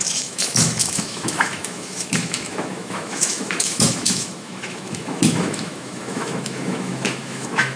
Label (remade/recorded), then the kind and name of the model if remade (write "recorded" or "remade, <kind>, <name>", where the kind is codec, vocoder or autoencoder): remade, autoencoder, DAC-VAE